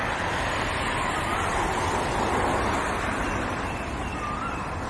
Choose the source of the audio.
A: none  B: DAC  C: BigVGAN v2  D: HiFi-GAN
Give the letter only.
C